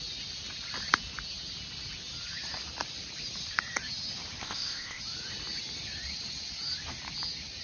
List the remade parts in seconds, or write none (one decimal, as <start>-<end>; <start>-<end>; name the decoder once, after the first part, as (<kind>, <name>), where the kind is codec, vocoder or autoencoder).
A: 4.4-5.0 (codec, ZipCodec)